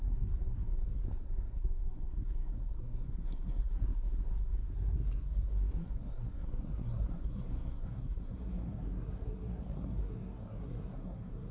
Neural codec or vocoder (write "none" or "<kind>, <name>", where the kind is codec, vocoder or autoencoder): codec, SNAC